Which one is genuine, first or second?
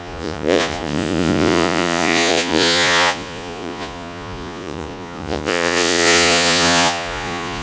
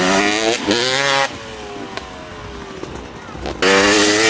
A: second